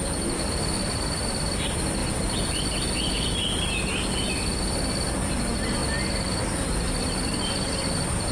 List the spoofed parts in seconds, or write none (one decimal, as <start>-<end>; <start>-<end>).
none